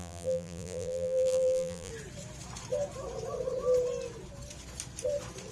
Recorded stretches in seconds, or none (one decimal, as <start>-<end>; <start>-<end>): 1.9-5.5